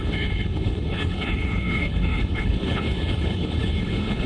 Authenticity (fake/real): fake